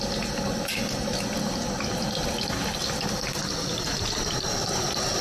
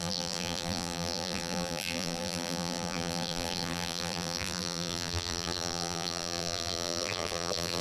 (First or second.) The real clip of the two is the first